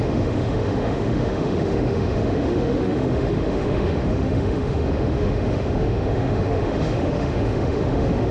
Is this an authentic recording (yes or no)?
no